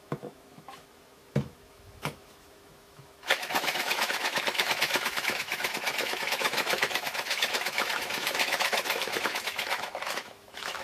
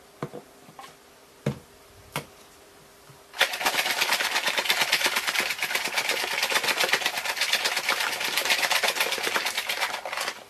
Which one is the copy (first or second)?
first